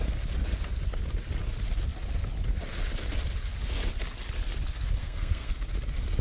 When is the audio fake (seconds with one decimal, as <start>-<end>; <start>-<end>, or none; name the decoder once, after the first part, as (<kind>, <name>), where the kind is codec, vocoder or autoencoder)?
5.0-5.5 (codec, SNAC)